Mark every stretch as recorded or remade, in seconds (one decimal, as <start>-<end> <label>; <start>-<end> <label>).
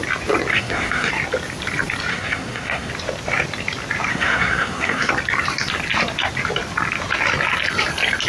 0.0-0.5 recorded; 0.5-1.1 remade; 1.1-2.1 recorded; 2.1-2.9 remade; 2.9-4.1 recorded; 4.1-5.1 remade; 5.1-8.3 recorded